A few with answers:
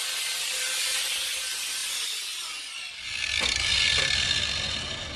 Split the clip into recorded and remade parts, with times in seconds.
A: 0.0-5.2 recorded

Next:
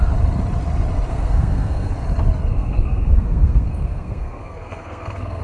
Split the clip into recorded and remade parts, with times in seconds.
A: 0.0-1.1 recorded; 1.1-1.9 remade; 1.9-2.5 recorded; 2.5-5.4 remade

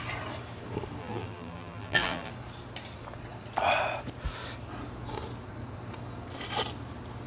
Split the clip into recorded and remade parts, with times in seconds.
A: 0.0-1.0 recorded; 1.0-2.3 remade; 2.3-7.3 recorded

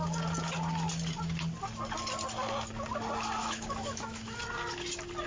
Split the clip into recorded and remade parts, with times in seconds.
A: 0.0-3.4 recorded; 3.4-4.4 remade; 4.4-5.3 recorded

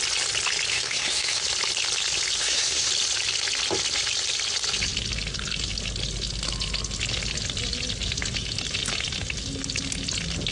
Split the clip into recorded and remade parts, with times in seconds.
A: 0.0-0.7 recorded; 0.7-1.4 remade; 1.4-2.4 recorded; 2.4-2.9 remade; 2.9-10.5 recorded

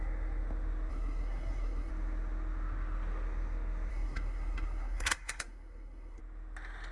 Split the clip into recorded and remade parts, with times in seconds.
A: 0.0-0.9 recorded; 0.9-1.9 remade; 1.9-3.9 recorded; 3.9-6.2 remade; 6.2-6.9 recorded

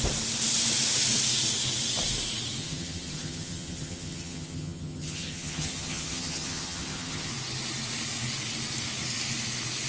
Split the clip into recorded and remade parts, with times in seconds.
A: 0.0-2.6 recorded; 2.6-7.3 remade; 7.3-9.9 recorded